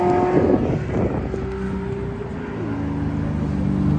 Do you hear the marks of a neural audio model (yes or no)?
no